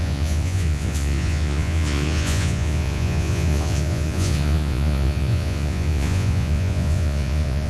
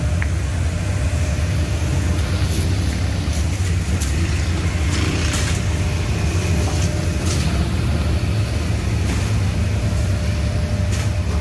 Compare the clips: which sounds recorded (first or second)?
second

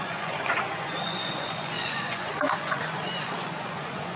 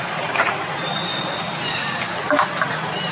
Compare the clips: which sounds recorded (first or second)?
second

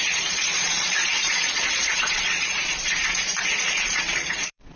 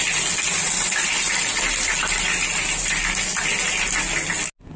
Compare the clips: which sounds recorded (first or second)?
second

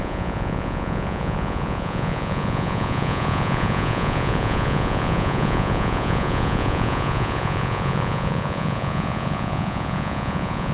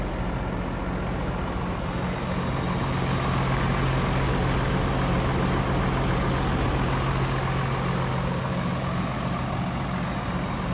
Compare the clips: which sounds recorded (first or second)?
second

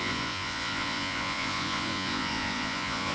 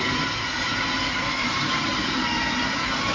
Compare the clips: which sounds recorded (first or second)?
second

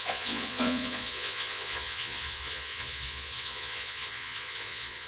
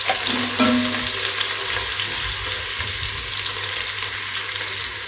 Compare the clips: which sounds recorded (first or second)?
second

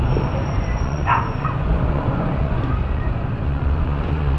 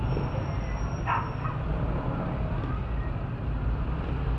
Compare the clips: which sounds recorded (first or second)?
second